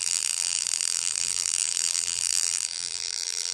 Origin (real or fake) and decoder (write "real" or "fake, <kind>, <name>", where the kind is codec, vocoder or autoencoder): fake, vocoder, BigVGAN v2